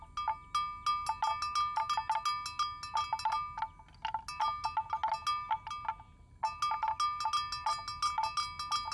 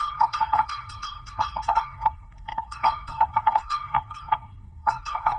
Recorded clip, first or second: first